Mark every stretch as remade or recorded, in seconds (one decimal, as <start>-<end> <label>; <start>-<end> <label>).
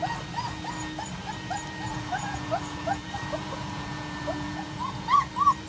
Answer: 0.0-1.9 recorded; 1.9-5.3 remade; 5.3-5.7 recorded